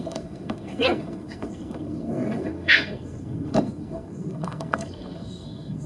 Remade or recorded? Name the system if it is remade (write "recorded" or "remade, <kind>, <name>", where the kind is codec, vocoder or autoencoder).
remade, codec, SNAC